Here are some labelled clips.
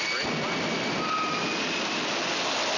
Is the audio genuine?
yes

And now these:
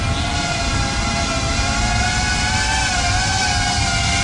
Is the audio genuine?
yes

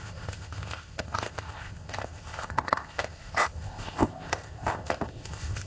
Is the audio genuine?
no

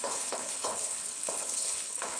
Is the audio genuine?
no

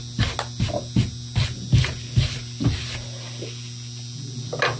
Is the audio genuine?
yes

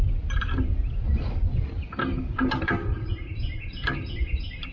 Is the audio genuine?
yes